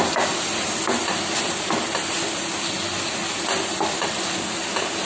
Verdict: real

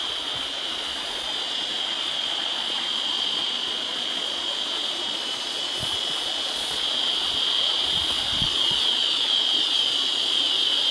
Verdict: fake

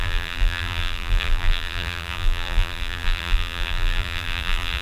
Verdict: fake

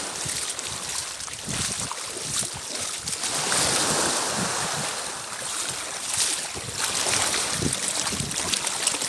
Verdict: real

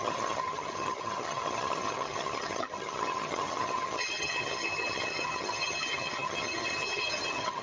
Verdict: fake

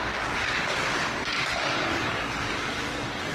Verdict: fake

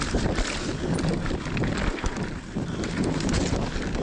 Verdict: real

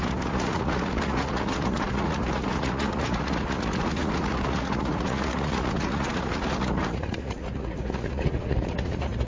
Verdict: fake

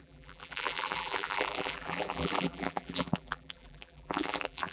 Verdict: fake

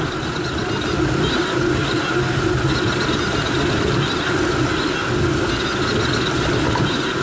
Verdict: real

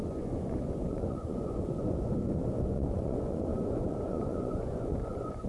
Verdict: fake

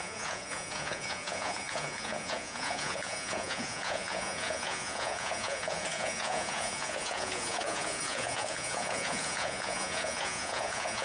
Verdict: fake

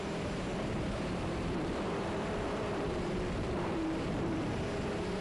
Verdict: fake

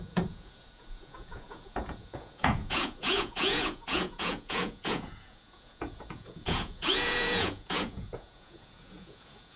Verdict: fake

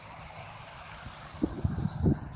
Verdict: real